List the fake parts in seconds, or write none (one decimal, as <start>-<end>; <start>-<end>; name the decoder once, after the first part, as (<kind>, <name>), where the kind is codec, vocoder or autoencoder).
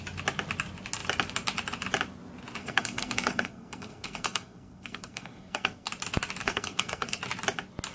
2.6-5.9 (codec, SNAC); 6.4-7.2